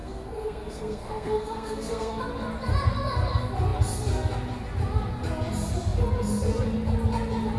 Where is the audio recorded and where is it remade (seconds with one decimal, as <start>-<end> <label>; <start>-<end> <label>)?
0.0-2.2 remade; 2.2-7.6 recorded